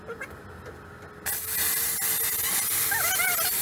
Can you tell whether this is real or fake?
real